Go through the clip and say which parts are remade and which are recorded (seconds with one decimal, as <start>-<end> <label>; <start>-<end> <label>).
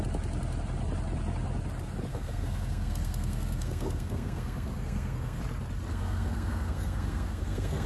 0.0-2.1 recorded; 2.1-5.4 remade; 5.4-5.9 recorded; 5.9-7.9 remade